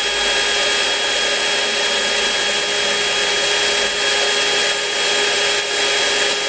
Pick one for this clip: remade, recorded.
recorded